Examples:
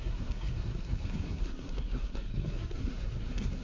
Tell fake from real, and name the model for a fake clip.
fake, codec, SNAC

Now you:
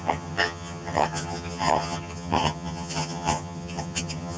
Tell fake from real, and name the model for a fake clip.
fake, vocoder, HiFi-GAN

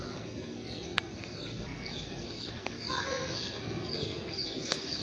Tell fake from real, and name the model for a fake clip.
fake, codec, SNAC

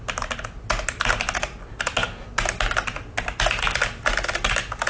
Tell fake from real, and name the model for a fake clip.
real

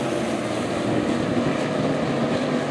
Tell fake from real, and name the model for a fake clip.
real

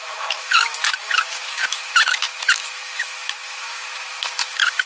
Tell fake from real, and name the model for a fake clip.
fake, autoencoder, DAC-VAE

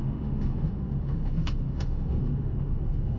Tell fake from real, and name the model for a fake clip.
fake, autoencoder, DAC-VAE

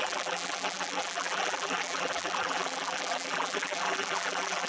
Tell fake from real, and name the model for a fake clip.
fake, vocoder, BigVGAN v2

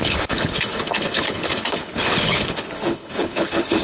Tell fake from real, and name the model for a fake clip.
fake, codec, HILCodec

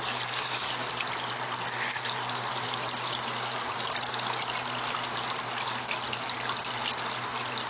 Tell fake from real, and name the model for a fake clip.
real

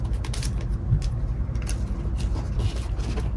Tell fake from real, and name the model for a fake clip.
real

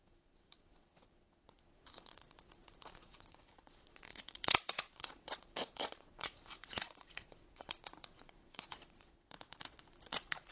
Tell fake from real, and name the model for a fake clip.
fake, vocoder, Vocos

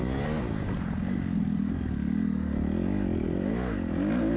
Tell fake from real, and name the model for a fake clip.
real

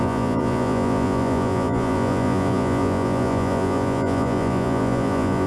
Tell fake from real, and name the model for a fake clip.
fake, vocoder, Vocos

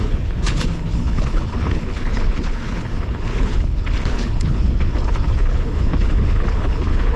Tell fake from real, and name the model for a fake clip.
fake, codec, HILCodec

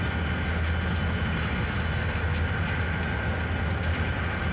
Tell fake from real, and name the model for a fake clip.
real